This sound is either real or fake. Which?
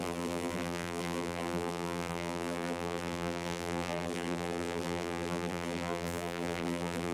fake